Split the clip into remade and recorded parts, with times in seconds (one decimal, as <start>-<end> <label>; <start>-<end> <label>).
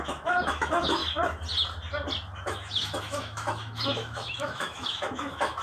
0.0-1.0 remade; 1.0-2.4 recorded; 2.4-5.6 remade